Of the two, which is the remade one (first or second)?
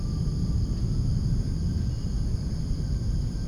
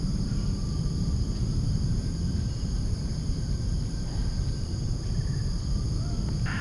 second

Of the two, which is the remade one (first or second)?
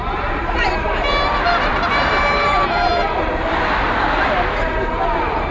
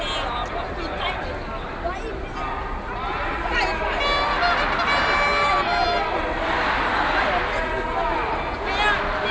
first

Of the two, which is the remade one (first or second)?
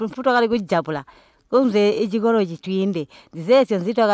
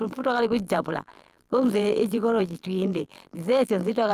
second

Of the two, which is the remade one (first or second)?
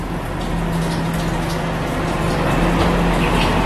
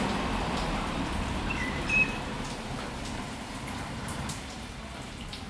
second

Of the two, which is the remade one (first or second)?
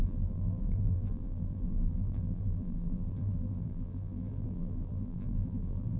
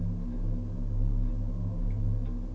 first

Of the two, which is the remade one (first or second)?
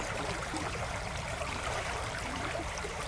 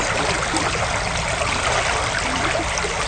first